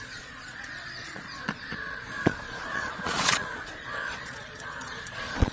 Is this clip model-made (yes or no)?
yes